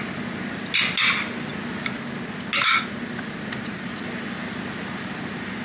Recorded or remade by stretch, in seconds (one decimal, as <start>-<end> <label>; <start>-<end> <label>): 0.0-5.6 recorded

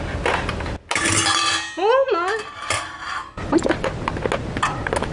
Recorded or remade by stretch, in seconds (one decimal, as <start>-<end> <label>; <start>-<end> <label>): 0.0-3.2 recorded; 3.2-4.1 remade; 4.1-5.1 recorded